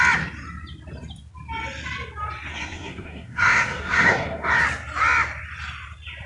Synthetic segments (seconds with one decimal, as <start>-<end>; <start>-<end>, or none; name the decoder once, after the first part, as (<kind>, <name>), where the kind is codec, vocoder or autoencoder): 2.5-4.6 (codec, SNAC)